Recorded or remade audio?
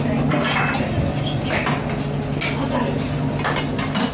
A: recorded